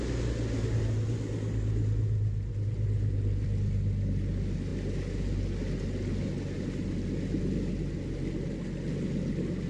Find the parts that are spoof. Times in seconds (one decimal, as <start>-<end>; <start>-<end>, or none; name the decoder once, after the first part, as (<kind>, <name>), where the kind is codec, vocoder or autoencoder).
none